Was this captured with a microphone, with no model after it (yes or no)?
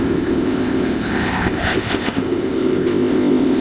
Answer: no